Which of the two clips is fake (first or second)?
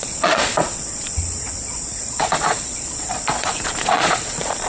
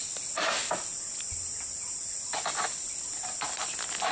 first